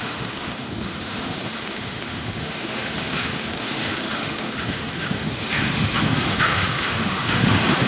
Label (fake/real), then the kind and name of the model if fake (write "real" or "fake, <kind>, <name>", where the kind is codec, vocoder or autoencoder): fake, autoencoder, DAC-VAE